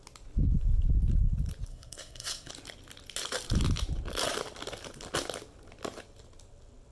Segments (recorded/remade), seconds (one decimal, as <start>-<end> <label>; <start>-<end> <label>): 0.0-1.7 recorded; 1.7-2.5 remade; 2.5-6.9 recorded